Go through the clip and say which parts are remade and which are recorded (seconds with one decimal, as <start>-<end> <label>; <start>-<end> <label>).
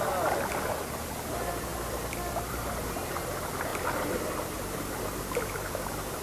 0.0-6.2 recorded